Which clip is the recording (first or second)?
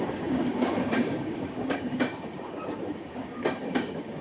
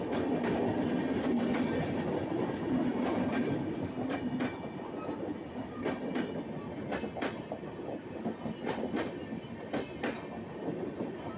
second